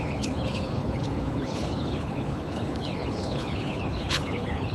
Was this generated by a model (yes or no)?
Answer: yes